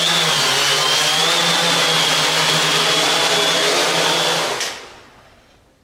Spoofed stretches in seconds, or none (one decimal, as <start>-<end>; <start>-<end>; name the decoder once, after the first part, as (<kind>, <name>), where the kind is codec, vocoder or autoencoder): none